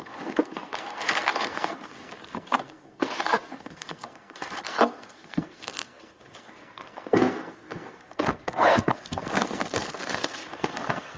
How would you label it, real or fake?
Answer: fake